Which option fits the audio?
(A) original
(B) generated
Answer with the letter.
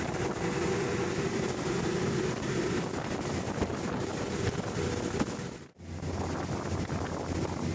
A